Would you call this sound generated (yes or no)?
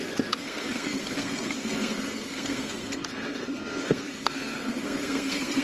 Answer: yes